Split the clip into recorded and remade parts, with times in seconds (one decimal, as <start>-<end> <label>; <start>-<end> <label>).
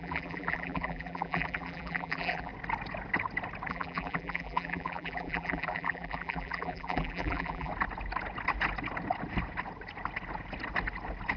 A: 0.0-2.5 remade; 2.5-3.7 recorded; 3.7-7.7 remade; 7.7-11.4 recorded